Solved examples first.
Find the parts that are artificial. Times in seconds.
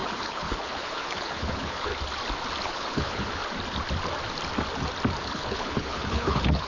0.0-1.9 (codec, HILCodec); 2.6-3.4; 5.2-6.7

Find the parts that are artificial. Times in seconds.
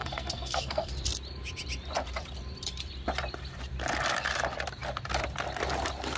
0.0-0.9 (codec, SNAC)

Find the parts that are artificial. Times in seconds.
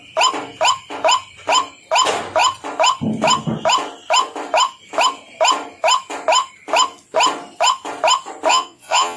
8.5-9.2 (vocoder, Vocos)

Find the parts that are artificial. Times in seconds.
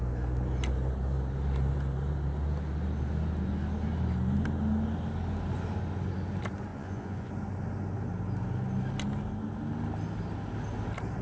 6.7-7.3 (vocoder, Vocos)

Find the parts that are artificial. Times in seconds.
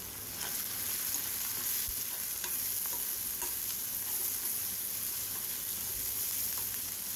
none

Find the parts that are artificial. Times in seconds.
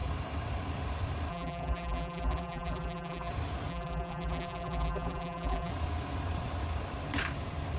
1.3-3.3 (vocoder, BigVGAN v2); 3.7-5.7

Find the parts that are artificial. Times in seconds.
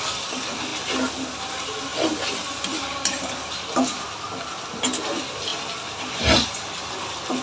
none